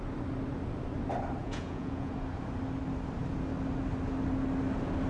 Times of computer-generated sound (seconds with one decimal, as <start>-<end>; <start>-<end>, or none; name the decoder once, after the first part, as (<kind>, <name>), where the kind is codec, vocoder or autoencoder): 1.4-2.1 (vocoder, Vocos)

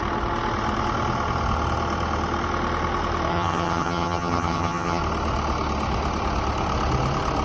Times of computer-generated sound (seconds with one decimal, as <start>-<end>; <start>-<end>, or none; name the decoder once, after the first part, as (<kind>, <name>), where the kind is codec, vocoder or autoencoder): 3.3-5.0 (vocoder, HiFi-GAN)

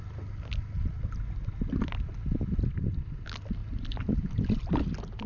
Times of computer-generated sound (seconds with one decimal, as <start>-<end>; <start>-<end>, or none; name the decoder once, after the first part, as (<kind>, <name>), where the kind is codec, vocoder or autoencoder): none

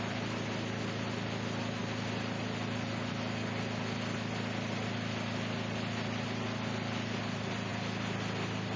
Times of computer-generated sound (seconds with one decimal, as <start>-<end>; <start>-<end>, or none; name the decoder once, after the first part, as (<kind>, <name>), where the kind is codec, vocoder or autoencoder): none